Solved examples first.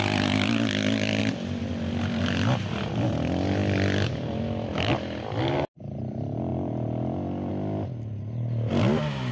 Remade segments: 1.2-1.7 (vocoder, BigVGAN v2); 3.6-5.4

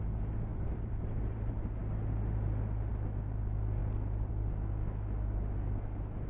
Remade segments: 0.5-1.1 (vocoder, BigVGAN v2)

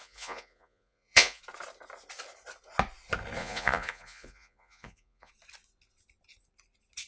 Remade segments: 0.0-1.4 (vocoder, Vocos); 3.4-5.3

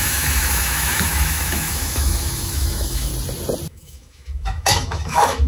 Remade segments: 0.0-3.1 (autoencoder, DAC-VAE); 3.7-5.5

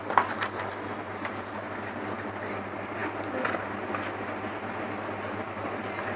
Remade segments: 0.0-3.0 (vocoder, BigVGAN v2)

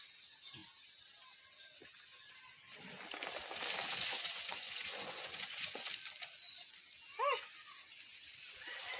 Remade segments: 3.8-5.9 (vocoder, Vocos)